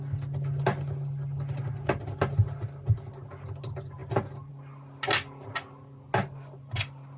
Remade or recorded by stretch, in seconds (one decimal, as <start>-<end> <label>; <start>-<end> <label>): 0.0-7.2 recorded